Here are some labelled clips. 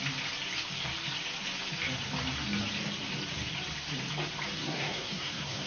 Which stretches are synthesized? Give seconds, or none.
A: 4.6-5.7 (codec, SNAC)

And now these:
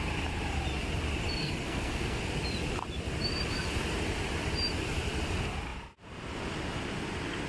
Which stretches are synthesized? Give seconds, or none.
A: 1.4-2.2 (codec, SNAC)

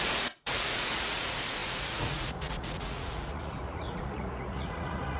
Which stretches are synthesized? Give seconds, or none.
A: 0.0-5.2 (vocoder, Vocos)

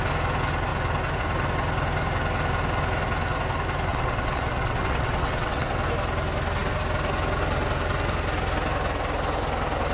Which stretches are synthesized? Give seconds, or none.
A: 3.9-5.7 (vocoder, WaveNeXt)

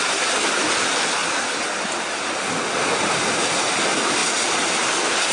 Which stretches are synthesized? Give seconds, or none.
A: none

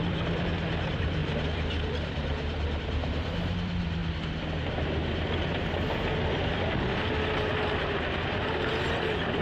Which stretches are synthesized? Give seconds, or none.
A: 0.0-4.0 (vocoder, BigVGAN v2); 8.1-9.4

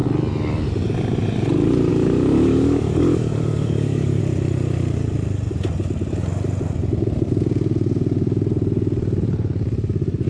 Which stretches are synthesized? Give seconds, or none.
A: 1.9-4.2 (codec, DAC)